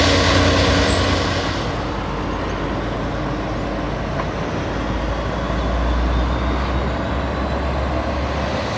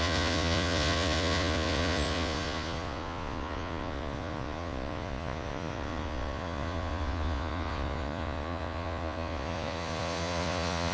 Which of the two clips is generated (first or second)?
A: second